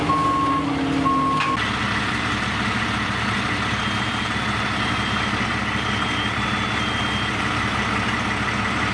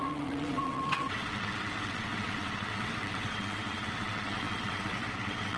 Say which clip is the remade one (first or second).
second